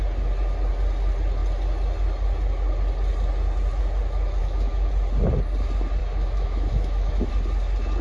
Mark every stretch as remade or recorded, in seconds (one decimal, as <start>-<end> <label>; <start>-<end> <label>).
0.0-4.4 recorded; 4.4-4.9 remade; 4.9-6.0 recorded; 6.0-7.3 remade; 7.3-8.0 recorded